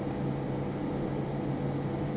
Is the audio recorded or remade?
recorded